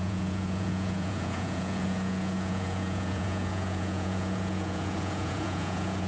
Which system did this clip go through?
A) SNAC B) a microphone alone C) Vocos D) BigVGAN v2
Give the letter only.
C